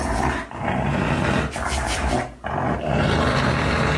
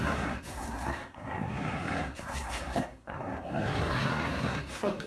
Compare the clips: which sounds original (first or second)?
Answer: first